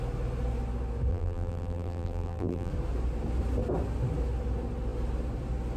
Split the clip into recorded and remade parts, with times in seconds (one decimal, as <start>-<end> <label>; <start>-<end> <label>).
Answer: 0.0-1.1 recorded; 1.1-2.7 remade; 2.7-5.8 recorded